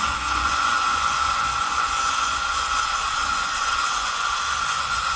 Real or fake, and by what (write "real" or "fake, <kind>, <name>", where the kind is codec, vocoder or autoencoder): fake, vocoder, Vocos